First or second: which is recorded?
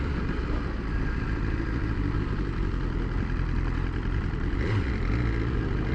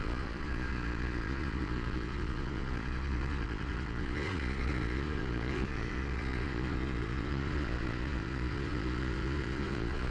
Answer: first